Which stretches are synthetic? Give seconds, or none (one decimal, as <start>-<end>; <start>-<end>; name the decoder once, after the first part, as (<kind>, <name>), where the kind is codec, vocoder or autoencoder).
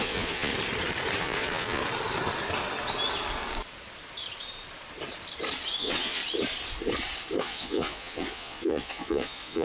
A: 0.0-0.5 (vocoder, Vocos); 1.2-1.8; 5.8-6.2; 7.4-9.6